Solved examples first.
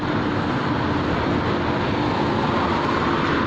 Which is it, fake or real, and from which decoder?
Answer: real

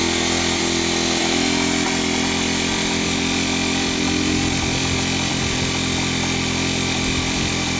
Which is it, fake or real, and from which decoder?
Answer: real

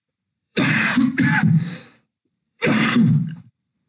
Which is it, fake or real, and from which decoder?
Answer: fake, vocoder, BigVGAN v2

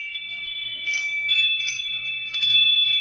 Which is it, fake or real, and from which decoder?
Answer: fake, codec, SNAC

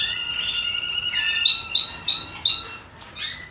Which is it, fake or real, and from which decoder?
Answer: real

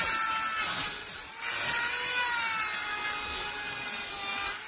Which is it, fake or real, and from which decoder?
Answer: real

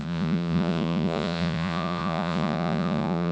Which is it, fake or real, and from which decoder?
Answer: fake, vocoder, Vocos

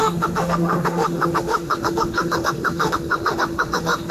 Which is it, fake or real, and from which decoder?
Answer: fake, autoencoder, DAC-VAE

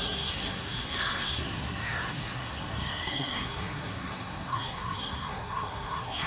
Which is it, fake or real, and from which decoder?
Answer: fake, codec, SNAC